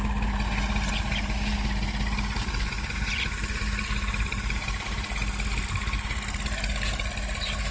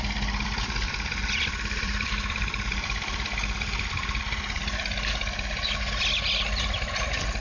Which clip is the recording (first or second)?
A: first